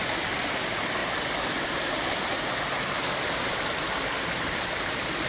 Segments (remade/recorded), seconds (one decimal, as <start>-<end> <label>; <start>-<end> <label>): 0.0-5.3 recorded